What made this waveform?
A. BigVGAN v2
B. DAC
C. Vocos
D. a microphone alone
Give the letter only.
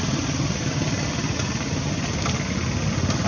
D